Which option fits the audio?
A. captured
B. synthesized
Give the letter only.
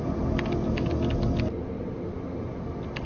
A